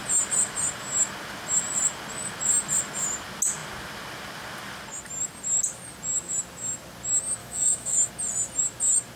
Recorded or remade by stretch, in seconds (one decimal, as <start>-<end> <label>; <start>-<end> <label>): 0.0-7.4 recorded; 7.4-8.1 remade; 8.1-9.2 recorded

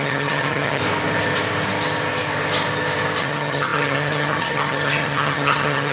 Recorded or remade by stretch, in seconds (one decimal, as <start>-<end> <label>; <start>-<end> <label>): 0.0-0.8 remade; 0.8-3.2 recorded; 3.2-5.9 remade

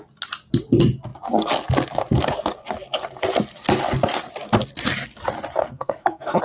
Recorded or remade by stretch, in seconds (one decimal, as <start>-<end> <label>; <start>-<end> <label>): 0.0-5.6 recorded; 5.6-6.4 remade

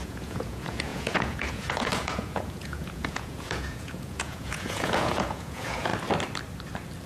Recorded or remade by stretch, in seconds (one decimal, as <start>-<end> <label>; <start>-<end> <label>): 0.0-5.9 remade; 5.9-7.1 recorded

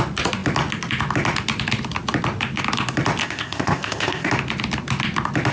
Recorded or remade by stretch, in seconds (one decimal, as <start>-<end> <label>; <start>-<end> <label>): 0.0-3.2 recorded; 3.2-4.3 remade; 4.3-5.5 recorded

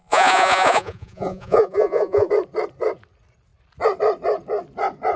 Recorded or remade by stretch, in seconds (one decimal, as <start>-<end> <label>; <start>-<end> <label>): 0.0-2.3 remade; 2.3-5.2 recorded

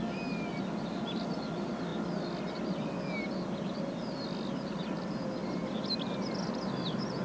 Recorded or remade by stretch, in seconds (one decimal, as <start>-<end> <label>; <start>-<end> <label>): 0.0-7.2 recorded

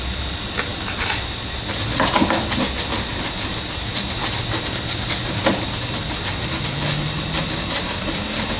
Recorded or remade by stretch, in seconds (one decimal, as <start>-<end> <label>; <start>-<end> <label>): 0.0-8.6 recorded